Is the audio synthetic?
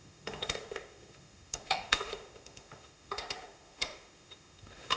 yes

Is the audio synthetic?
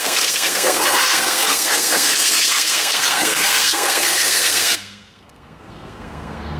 yes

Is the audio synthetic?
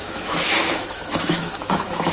yes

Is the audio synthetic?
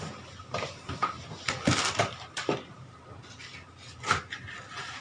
yes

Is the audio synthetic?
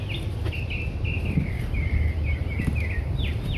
no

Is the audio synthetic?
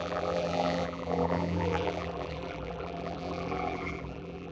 yes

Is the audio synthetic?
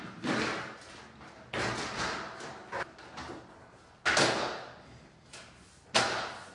no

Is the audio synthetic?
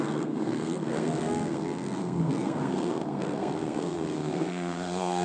yes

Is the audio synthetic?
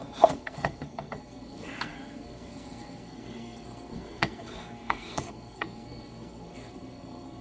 yes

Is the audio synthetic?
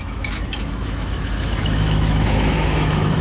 yes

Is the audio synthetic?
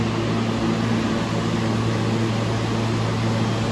no